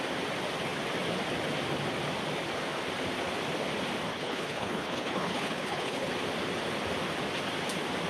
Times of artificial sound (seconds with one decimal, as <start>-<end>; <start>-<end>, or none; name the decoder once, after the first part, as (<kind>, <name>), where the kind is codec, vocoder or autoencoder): 4.1-6.1 (codec, HILCodec)